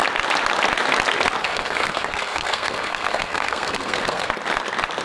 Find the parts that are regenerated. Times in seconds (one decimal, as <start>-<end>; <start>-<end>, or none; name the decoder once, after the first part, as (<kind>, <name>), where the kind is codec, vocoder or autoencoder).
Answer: 1.4-4.3 (codec, SNAC)